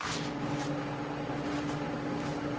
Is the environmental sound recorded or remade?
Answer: recorded